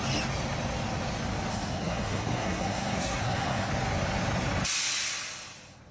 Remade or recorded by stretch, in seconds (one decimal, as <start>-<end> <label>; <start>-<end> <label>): 0.0-1.5 recorded; 1.5-3.7 remade; 3.7-5.9 recorded